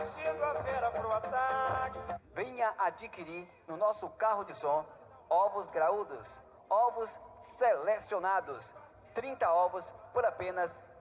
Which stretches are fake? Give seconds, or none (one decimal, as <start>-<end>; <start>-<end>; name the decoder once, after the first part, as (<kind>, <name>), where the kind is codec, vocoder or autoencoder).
1.8-4.5 (autoencoder, DAC-VAE); 7.4-8.6